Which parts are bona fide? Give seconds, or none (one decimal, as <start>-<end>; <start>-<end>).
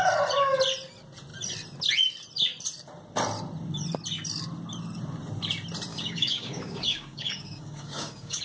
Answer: 0.0-5.9